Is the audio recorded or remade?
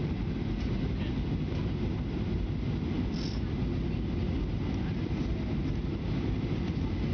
recorded